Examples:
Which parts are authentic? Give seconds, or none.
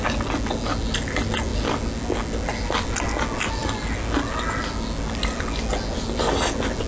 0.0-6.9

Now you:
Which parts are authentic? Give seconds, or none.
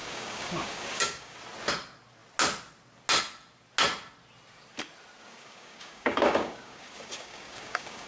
1.4-5.2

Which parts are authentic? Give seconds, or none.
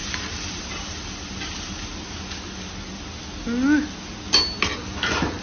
1.9-5.4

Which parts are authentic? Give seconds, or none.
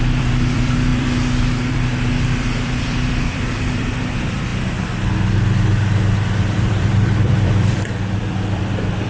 4.5-6.4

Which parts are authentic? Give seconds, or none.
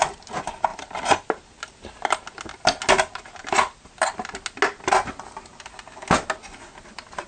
0.0-7.3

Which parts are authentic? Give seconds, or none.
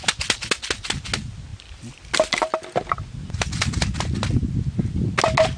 0.0-5.6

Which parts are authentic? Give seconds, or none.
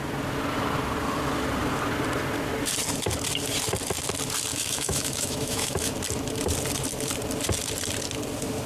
0.0-4.5; 5.9-8.7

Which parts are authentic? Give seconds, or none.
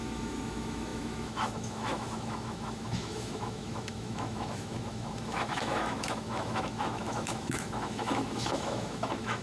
none